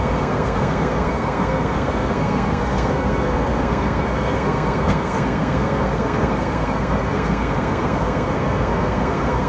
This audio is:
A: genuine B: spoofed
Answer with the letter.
B